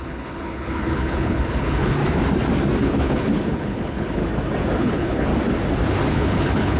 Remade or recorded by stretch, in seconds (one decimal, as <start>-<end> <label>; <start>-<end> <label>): 0.0-2.0 remade; 2.0-2.8 recorded; 2.8-4.2 remade; 4.2-4.8 recorded; 4.8-5.3 remade; 5.3-6.1 recorded; 6.1-6.8 remade

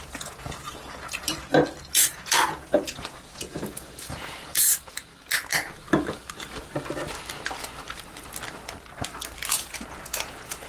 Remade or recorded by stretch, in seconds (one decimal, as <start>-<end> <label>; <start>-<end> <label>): 0.0-1.3 remade; 1.3-1.8 recorded; 1.8-5.1 remade; 5.1-9.5 recorded; 9.5-10.7 remade

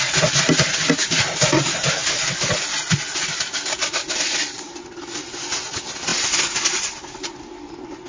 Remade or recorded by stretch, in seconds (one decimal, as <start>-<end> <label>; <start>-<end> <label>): 0.0-8.1 recorded